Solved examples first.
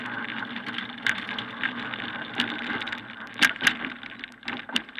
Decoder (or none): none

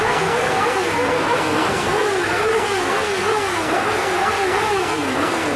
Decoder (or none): codec, SNAC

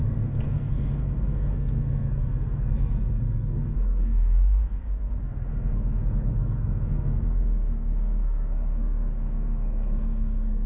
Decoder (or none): codec, SNAC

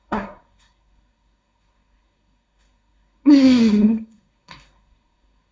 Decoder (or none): codec, SNAC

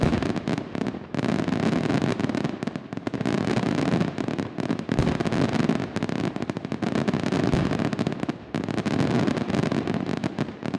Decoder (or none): none